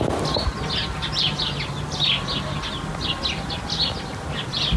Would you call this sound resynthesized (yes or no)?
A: no